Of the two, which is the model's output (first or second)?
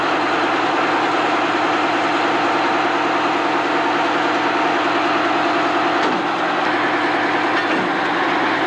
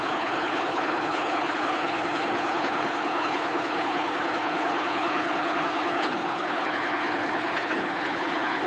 second